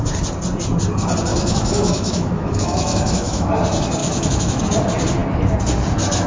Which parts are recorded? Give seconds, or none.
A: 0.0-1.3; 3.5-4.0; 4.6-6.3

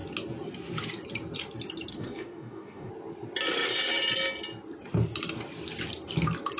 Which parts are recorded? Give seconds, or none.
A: 0.0-1.9; 2.9-6.6

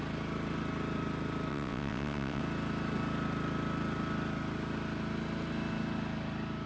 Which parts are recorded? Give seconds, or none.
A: 0.0-1.5; 2.4-6.7

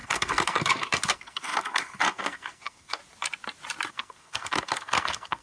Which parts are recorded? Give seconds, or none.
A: 3.0-3.9

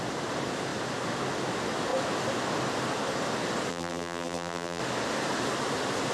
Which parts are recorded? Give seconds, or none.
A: 0.0-3.7; 4.8-6.1